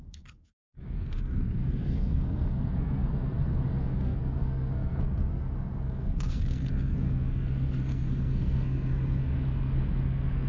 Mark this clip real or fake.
fake